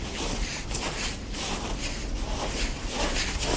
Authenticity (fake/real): real